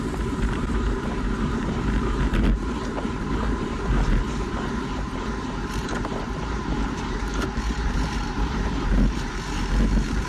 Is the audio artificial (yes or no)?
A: yes